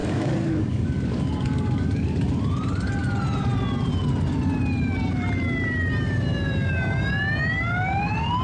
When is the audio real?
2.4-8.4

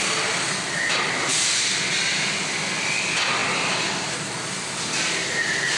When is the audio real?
0.0-5.8

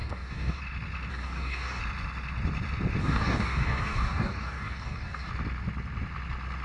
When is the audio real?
0.6-1.1; 1.8-3.0; 5.3-6.6

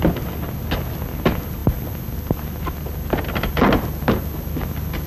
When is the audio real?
0.0-5.1

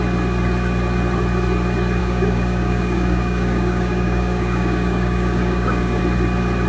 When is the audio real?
0.0-2.0; 6.0-6.7

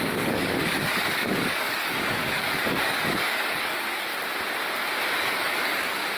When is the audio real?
4.1-5.2